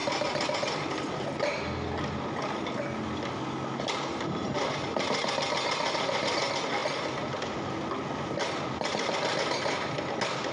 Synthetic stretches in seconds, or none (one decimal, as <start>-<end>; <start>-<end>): none